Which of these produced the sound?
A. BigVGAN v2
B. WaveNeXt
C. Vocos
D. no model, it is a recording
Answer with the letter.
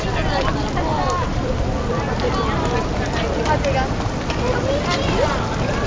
D